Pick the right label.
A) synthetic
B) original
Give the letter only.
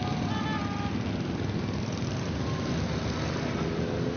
B